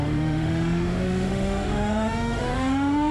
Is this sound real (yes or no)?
no